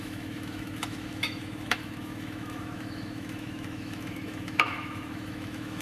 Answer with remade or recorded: remade